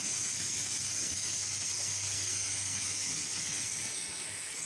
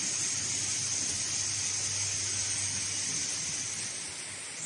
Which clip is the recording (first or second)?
second